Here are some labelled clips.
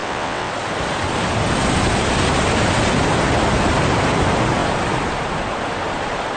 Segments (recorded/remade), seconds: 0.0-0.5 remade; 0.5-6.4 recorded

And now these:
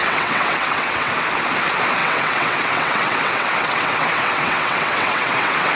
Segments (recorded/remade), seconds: 0.0-1.1 remade; 1.1-2.0 recorded; 2.0-5.7 remade

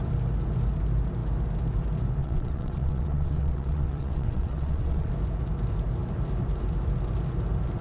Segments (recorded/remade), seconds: 0.0-2.2 recorded; 2.2-5.1 remade; 5.1-7.8 recorded

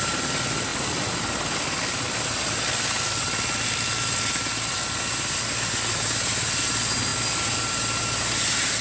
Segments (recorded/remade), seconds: 0.0-8.8 recorded

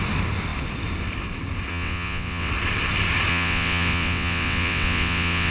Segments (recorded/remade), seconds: 0.0-1.7 recorded; 1.7-2.5 remade; 2.5-3.3 recorded; 3.3-5.5 remade

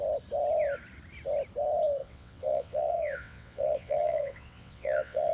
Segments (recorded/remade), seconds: 0.0-2.0 recorded; 2.0-5.3 remade

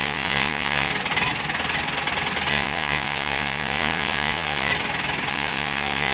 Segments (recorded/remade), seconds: 0.0-0.9 remade; 0.9-2.5 recorded; 2.5-4.7 remade; 4.7-5.3 recorded; 5.3-6.1 remade

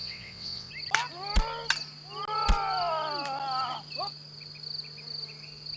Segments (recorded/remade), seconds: 0.0-0.7 remade; 0.7-5.8 recorded